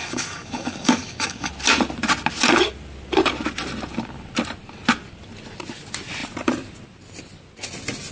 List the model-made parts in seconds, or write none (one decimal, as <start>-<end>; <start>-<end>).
0.0-1.5